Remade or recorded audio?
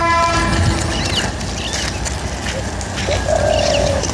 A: recorded